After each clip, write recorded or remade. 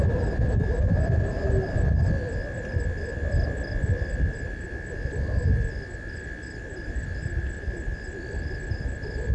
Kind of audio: recorded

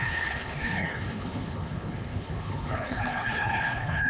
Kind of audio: remade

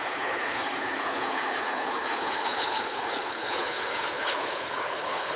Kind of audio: remade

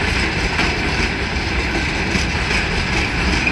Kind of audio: recorded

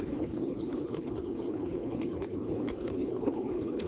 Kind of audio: remade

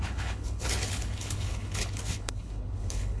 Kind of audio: remade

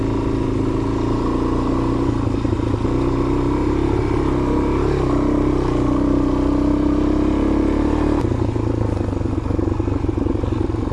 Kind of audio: recorded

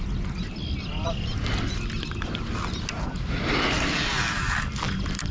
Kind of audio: recorded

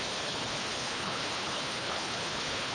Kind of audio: remade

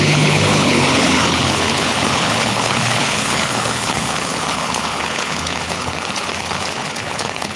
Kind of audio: remade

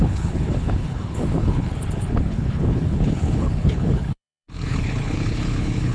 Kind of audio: remade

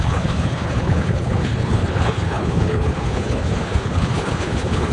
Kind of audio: remade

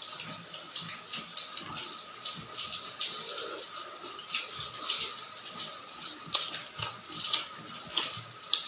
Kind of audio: recorded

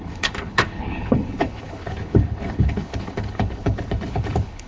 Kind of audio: remade